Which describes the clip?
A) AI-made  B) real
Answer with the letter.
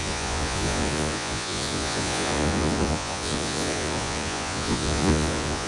A